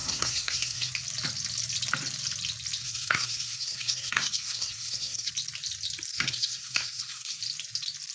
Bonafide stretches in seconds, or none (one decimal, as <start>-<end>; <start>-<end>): 0.9-2.8; 5.3-6.1; 7.4-8.1